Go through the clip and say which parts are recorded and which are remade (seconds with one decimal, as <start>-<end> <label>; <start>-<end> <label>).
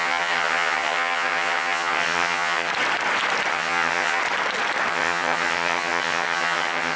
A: 0.0-2.7 remade; 2.7-3.5 recorded; 3.5-4.2 remade; 4.2-4.9 recorded; 4.9-7.0 remade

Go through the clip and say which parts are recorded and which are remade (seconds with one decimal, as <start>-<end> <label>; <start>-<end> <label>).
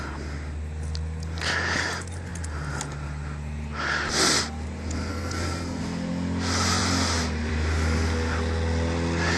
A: 0.0-5.1 recorded; 5.1-5.8 remade; 5.8-9.4 recorded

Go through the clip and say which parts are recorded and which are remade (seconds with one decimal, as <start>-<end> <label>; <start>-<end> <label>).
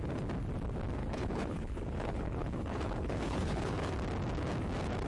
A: 0.0-1.0 recorded; 1.0-3.9 remade; 3.9-5.1 recorded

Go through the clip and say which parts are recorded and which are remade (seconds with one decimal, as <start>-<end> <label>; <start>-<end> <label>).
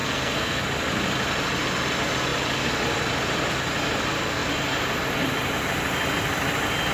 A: 0.0-0.6 remade; 0.6-6.9 recorded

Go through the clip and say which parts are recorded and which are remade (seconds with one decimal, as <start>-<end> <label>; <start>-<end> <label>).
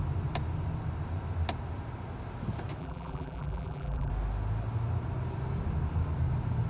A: 0.0-2.8 recorded; 2.8-4.1 remade; 4.1-6.7 recorded